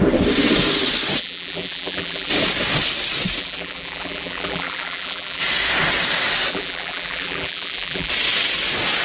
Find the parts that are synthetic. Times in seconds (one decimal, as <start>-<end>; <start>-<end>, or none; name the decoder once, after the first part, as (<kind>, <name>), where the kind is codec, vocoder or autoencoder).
1.2-2.3 (vocoder, BigVGAN v2); 3.4-5.4; 6.5-8.1